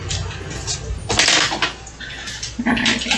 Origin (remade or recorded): recorded